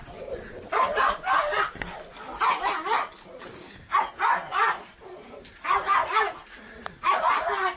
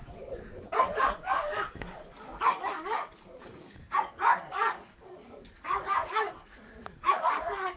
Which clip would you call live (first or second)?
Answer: first